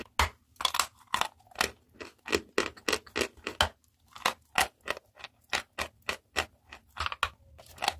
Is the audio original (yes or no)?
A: yes